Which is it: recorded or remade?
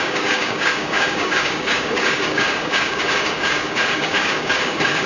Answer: remade